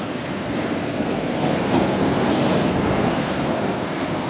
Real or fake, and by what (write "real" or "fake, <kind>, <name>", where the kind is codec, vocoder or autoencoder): fake, codec, SNAC